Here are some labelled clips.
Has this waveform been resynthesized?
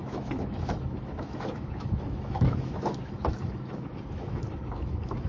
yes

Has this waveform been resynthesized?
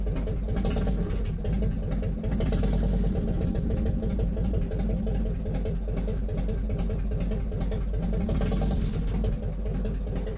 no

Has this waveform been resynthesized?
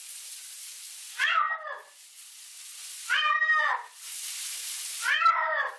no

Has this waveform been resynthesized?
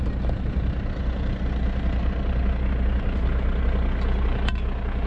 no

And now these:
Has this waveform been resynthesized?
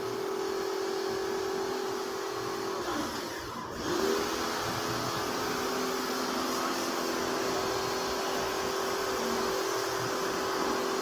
no